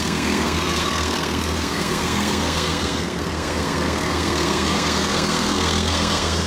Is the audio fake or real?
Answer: fake